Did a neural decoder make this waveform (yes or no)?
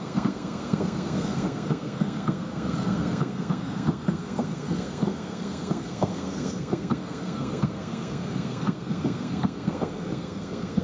yes